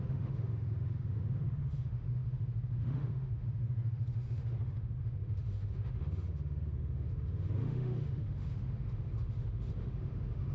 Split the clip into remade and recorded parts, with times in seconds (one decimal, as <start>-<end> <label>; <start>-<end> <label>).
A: 0.0-10.5 remade